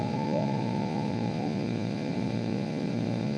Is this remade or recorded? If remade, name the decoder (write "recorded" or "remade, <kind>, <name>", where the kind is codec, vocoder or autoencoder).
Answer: remade, vocoder, Vocos